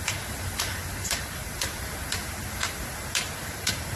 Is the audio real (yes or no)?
no